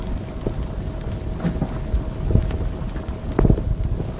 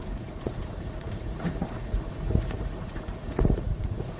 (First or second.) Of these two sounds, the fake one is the second